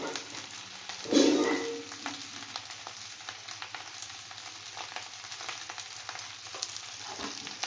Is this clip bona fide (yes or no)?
yes